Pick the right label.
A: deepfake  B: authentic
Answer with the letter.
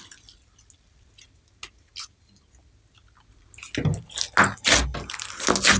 B